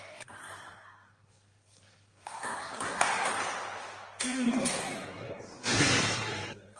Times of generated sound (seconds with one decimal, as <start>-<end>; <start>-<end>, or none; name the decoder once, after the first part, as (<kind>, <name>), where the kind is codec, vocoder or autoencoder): 0.0-3.3 (codec, SNAC); 4.2-6.8